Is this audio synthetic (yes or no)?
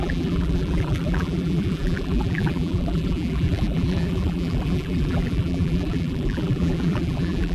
yes